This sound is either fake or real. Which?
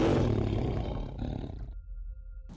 real